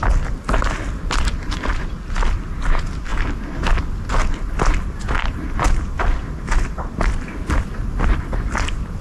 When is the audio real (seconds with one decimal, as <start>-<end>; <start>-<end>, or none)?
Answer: 0.0-9.0